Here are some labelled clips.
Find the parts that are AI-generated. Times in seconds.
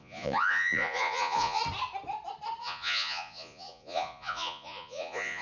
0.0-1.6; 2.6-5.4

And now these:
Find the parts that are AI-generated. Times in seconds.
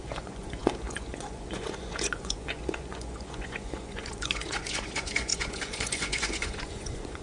0.0-7.2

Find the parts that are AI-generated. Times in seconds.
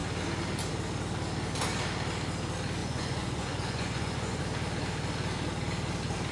2.8-4.4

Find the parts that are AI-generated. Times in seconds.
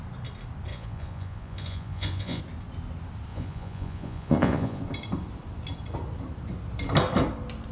0.7-2.4; 3.3-4.8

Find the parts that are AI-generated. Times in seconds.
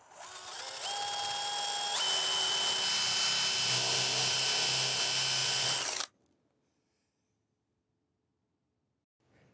none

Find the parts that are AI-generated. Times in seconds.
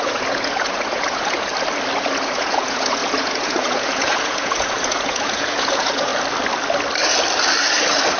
0.0-1.5; 2.0-6.1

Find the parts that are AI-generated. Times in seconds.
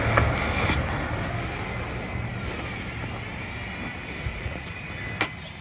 4.3-4.9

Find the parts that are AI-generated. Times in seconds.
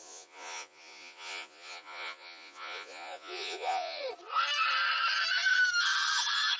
0.0-4.0